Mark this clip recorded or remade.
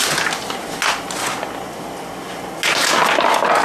recorded